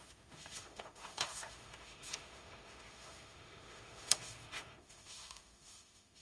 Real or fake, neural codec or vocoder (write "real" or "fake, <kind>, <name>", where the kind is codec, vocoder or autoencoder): fake, autoencoder, DAC-VAE